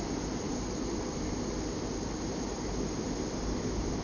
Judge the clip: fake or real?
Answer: real